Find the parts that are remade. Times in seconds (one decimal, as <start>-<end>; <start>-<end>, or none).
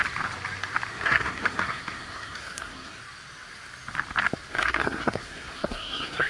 0.9-3.0; 4.5-6.3